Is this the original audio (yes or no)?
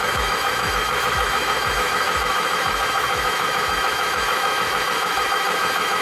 no